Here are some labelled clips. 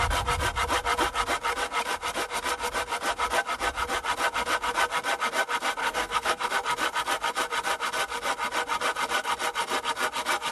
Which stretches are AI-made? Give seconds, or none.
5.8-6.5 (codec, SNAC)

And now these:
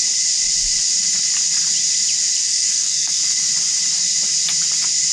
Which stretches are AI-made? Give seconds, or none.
2.4-3.2 (codec, SNAC)

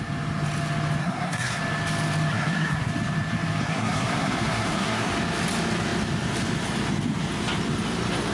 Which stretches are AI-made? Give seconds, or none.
1.0-1.6 (codec, SNAC); 2.3-2.9; 3.6-5.1

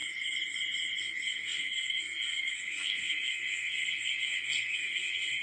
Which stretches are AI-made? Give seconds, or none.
1.0-5.4 (codec, SNAC)